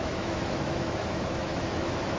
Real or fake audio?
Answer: fake